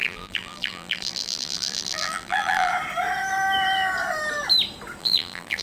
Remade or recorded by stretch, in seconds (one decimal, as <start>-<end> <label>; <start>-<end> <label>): 0.0-2.7 remade; 2.7-5.0 recorded; 5.0-5.6 remade